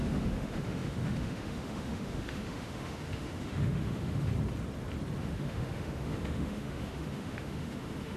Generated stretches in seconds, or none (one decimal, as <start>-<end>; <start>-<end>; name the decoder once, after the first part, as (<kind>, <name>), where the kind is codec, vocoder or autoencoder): 0.0-4.3 (autoencoder, DAC-VAE); 5.2-8.2